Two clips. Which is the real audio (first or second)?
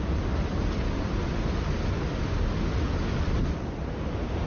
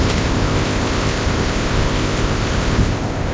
first